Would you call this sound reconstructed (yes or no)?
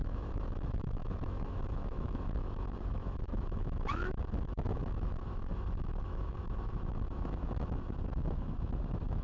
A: yes